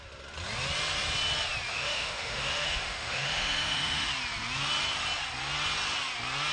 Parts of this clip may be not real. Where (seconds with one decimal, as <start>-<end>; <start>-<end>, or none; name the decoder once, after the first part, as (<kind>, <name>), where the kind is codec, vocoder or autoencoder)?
1.7-4.1 (autoencoder, DAC-VAE)